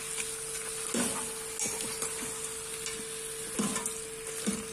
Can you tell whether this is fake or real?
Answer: real